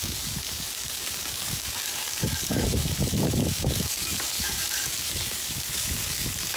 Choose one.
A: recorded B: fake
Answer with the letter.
B